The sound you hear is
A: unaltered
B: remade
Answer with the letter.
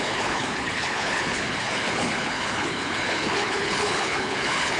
B